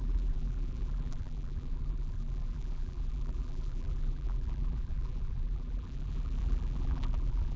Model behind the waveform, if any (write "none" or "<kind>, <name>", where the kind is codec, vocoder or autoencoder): vocoder, BigVGAN v2